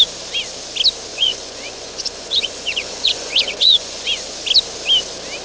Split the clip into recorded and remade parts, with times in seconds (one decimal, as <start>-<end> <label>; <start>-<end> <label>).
0.0-1.1 recorded; 1.1-4.3 remade; 4.3-5.4 recorded